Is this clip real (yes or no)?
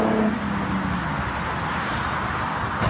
yes